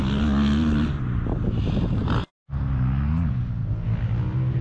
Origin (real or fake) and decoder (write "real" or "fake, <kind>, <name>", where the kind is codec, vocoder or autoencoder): real